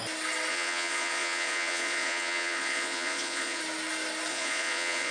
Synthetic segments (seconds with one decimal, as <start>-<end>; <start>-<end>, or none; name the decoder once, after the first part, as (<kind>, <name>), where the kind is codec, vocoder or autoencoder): 0.5-3.6 (vocoder, Vocos); 4.3-5.1

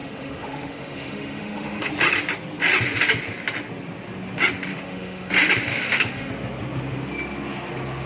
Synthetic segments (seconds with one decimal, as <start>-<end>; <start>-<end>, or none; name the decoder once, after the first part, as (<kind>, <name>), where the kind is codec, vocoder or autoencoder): 0.0-1.9 (autoencoder, DAC-VAE); 4.7-5.3; 5.7-6.3

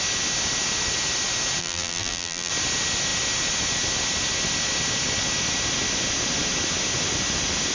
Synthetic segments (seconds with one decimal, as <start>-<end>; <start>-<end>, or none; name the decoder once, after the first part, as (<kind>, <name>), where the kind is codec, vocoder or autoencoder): 1.6-2.5 (vocoder, BigVGAN v2)

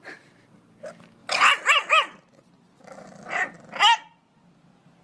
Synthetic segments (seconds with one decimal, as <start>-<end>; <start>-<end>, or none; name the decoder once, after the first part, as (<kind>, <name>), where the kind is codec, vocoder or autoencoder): none

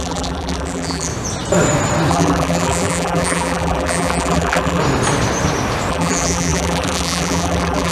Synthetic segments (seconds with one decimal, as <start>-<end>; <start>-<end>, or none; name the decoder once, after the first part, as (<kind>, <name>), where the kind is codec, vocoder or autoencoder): 0.0-1.1 (vocoder, BigVGAN v2); 2.1-4.8; 5.9-7.9

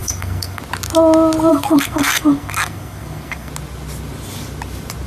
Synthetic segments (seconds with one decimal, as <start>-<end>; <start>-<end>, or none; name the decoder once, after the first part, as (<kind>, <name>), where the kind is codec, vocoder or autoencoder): 0.0-0.6 (codec, SNAC); 1.5-3.5